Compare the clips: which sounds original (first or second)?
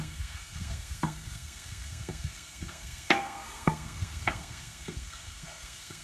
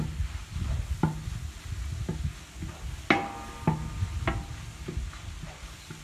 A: second